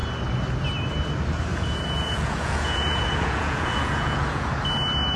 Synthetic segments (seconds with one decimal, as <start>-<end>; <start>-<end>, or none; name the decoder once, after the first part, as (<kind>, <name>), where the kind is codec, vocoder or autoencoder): 1.5-4.6 (vocoder, Vocos)